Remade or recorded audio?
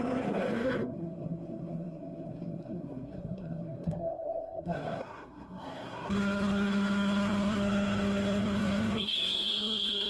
remade